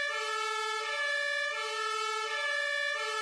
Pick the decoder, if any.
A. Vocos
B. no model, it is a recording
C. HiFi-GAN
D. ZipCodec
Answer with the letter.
B